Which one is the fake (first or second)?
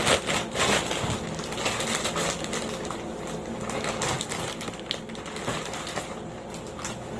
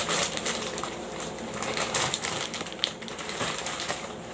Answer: second